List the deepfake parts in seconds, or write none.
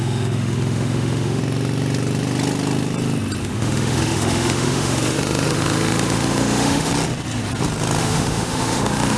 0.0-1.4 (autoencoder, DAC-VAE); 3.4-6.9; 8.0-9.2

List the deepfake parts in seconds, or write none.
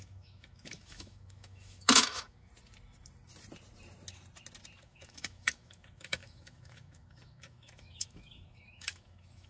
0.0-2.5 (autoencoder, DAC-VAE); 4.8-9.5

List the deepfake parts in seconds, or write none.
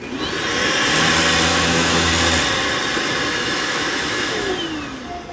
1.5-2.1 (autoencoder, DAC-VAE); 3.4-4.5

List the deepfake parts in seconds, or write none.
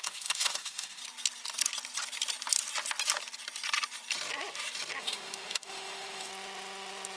0.0-1.0 (autoencoder, DAC-VAE); 5.0-6.3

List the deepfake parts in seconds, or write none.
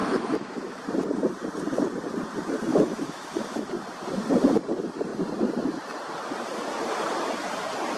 0.0-0.8 (autoencoder, DAC-VAE); 2.7-3.7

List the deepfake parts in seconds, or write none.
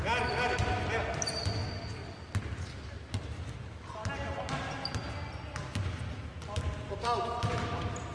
none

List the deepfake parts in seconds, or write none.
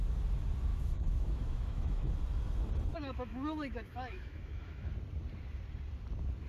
0.7-2.1 (autoencoder, DAC-VAE); 2.9-4.9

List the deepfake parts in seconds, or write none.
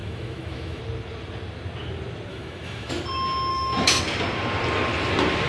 0.0-0.8 (autoencoder, DAC-VAE); 2.3-2.9; 3.5-4.0